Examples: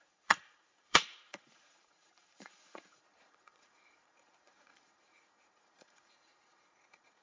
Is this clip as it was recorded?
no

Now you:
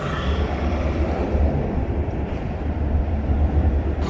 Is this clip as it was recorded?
no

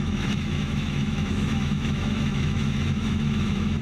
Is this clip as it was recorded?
no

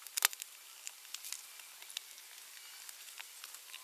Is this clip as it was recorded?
yes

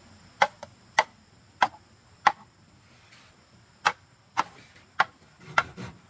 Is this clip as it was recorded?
yes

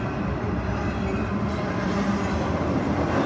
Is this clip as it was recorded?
yes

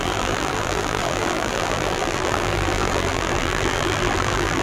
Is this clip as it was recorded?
no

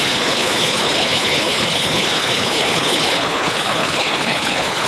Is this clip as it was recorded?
no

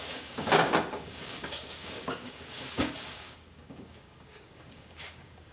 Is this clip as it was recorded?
no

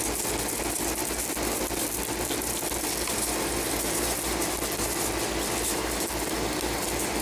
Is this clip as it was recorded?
yes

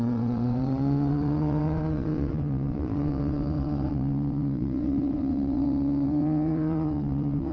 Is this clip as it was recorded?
no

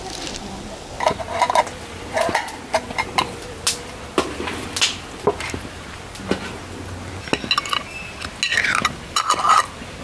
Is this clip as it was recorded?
yes